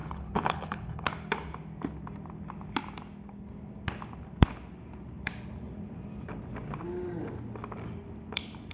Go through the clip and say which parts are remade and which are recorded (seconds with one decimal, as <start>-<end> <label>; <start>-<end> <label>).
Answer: 0.0-1.1 remade; 1.1-8.7 recorded